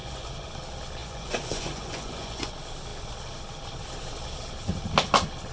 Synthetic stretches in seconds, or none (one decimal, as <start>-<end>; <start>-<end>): 0.0-0.5; 1.0-2.5